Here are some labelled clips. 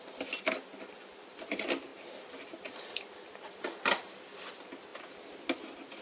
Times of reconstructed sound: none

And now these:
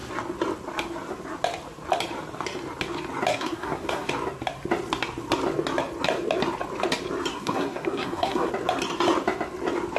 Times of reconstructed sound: 3.3-4.1; 7.3-8.5

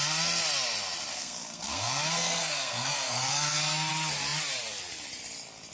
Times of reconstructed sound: 1.1-3.9

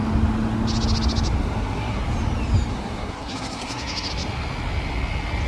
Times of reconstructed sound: 1.4-2.0; 2.7-4.1

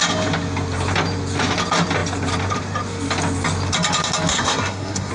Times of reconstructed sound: 4.3-5.1

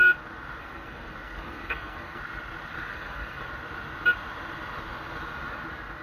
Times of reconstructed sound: 0.6-2.2; 2.9-3.5

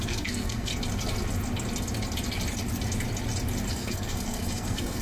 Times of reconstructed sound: 0.0-0.7; 3.7-5.0